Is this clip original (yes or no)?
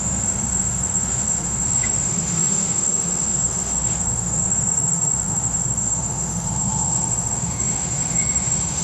no